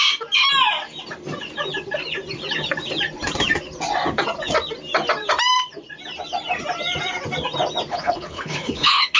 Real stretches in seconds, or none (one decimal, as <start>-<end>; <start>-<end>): 0.0-7.9